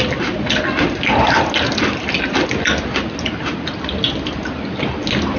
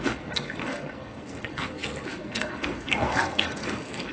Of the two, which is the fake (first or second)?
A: second